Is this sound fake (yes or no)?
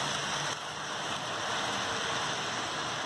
no